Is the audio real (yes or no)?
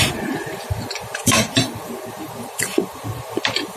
no